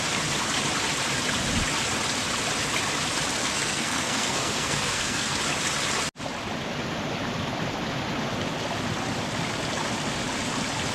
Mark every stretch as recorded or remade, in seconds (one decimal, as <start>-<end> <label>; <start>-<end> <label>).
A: 0.0-3.4 recorded; 3.4-5.4 remade; 5.4-10.9 recorded